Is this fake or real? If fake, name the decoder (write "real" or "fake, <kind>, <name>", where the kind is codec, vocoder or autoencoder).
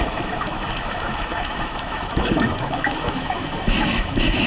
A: fake, autoencoder, DAC-VAE